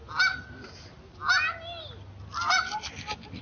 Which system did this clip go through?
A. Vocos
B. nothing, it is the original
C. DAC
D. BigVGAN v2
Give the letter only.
B